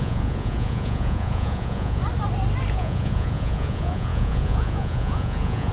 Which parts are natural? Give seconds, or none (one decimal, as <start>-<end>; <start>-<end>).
2.0-2.7